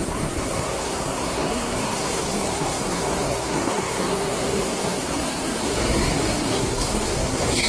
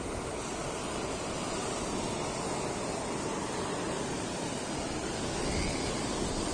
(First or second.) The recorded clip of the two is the second